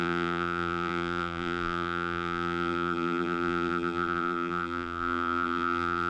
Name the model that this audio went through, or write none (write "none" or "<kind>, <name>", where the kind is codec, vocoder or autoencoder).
vocoder, BigVGAN v2